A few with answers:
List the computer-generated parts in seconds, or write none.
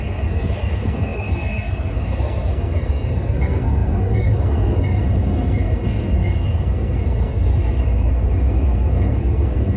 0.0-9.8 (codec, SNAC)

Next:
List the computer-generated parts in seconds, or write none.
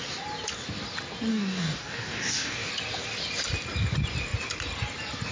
1.3-2.7 (codec, DAC)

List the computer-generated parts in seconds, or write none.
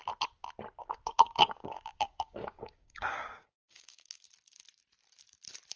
0.8-4.2 (codec, DAC)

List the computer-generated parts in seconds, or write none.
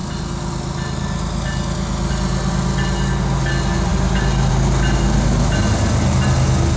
none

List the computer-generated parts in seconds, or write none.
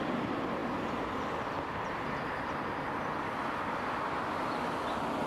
none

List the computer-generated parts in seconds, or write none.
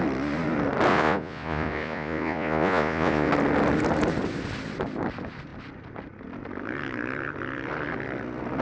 0.9-3.3 (vocoder, Vocos)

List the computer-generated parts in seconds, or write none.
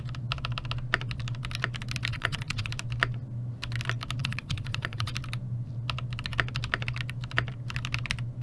2.1-2.7 (vocoder, Vocos); 4.2-5.1